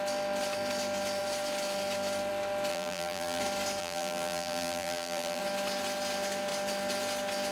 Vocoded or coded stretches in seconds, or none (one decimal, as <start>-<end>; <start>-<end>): 2.7-3.4; 3.8-5.4